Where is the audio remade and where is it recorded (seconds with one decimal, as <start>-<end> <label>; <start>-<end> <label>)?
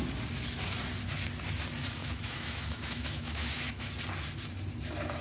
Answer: 0.0-2.0 recorded; 2.0-3.9 remade; 3.9-5.2 recorded